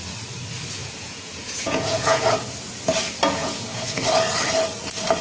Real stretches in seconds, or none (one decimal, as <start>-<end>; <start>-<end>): 0.0-0.8; 2.2-3.4; 4.0-5.2